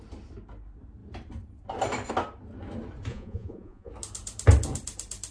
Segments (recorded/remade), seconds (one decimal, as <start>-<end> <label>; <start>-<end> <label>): 0.0-3.1 recorded; 3.1-3.9 remade; 3.9-5.3 recorded